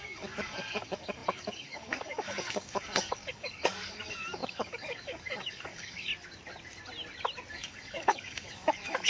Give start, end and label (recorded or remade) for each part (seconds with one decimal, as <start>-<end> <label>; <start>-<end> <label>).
0.0-6.1 remade; 6.1-7.5 recorded; 7.5-9.1 remade